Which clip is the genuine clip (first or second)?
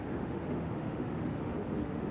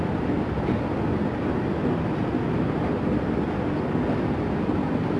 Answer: second